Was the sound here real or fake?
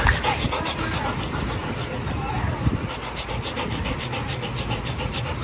real